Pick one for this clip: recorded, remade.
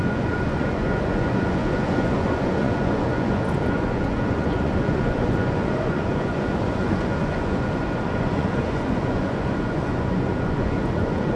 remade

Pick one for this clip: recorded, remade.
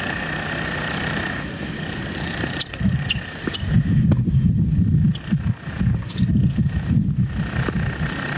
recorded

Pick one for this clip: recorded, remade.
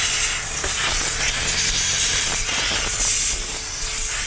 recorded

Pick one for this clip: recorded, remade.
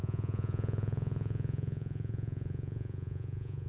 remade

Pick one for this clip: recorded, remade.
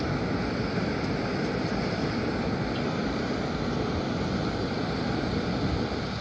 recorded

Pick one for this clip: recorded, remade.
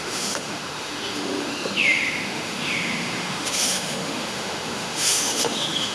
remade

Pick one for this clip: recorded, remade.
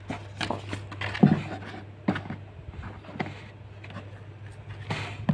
recorded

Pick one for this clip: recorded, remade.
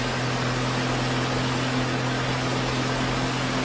recorded